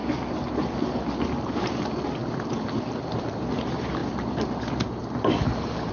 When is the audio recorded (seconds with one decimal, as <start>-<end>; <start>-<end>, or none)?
0.0-5.9